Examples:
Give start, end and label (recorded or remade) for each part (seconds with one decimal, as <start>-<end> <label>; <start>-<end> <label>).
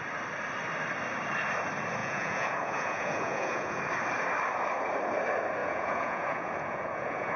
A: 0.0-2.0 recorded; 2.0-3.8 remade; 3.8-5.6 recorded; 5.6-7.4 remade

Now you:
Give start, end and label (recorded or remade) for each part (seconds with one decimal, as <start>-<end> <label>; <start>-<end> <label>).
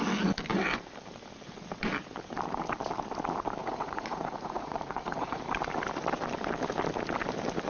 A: 0.0-3.6 recorded; 3.6-5.4 remade; 5.4-7.7 recorded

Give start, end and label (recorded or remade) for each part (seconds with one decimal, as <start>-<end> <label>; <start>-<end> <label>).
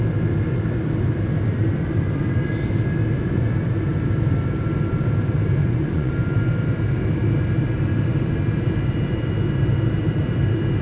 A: 0.0-5.6 recorded; 5.6-6.1 remade; 6.1-10.8 recorded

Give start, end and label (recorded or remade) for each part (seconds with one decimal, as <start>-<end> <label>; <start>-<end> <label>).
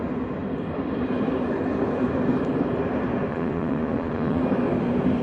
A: 0.0-3.3 recorded; 3.3-4.4 remade; 4.4-5.2 recorded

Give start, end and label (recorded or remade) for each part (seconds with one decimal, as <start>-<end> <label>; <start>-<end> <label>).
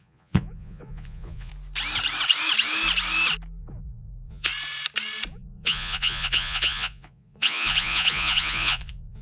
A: 0.0-1.5 remade; 1.5-3.6 recorded; 3.6-4.5 remade; 4.5-5.3 recorded; 5.3-9.2 remade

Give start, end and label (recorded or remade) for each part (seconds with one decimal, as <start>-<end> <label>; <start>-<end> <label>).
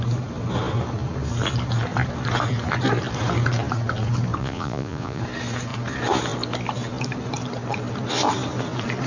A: 0.0-4.4 recorded; 4.4-5.2 remade; 5.2-9.1 recorded